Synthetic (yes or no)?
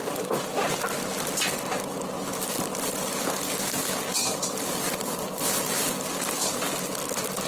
no